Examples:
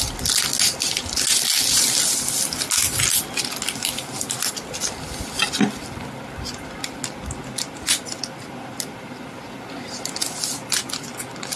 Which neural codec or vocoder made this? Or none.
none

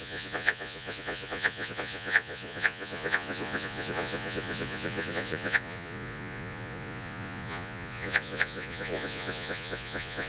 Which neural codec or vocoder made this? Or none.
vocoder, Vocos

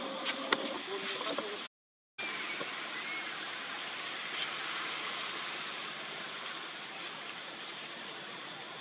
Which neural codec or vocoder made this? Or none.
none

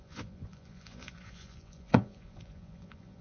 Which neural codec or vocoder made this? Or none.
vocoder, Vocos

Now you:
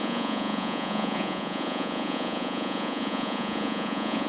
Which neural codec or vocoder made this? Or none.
vocoder, Vocos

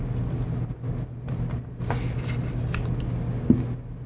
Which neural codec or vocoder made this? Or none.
none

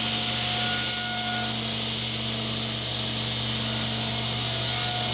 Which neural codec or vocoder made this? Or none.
none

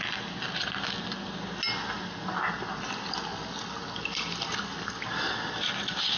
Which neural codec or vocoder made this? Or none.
none